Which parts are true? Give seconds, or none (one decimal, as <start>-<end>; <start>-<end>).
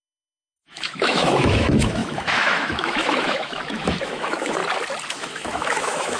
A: 4.6-5.1